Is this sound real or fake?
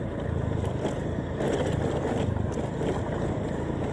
fake